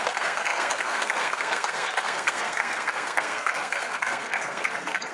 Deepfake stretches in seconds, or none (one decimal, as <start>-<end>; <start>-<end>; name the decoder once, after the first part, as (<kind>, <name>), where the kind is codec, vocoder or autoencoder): 0.0-5.1 (codec, SNAC)